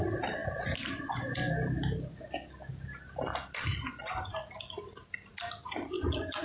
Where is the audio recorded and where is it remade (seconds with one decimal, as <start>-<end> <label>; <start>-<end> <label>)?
0.0-6.4 recorded